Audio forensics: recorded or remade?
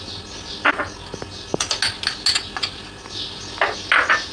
recorded